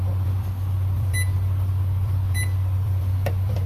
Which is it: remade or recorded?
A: recorded